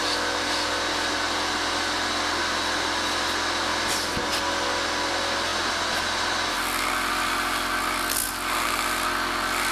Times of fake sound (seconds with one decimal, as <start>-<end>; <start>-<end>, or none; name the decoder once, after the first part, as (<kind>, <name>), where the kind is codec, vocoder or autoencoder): none